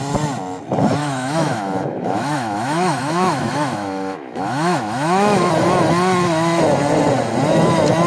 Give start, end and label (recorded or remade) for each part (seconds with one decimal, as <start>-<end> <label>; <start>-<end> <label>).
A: 0.0-1.0 recorded; 1.0-5.5 remade; 5.5-8.1 recorded